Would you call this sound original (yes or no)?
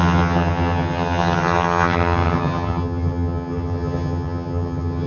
no